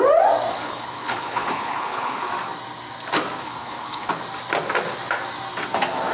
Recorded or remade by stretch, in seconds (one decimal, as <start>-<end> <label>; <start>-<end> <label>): 0.0-0.5 recorded; 0.5-2.3 remade; 2.3-3.4 recorded; 3.4-4.1 remade; 4.1-6.1 recorded